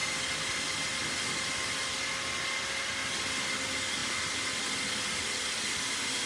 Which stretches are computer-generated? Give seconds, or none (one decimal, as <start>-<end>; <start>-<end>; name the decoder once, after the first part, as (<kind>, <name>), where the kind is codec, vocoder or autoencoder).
none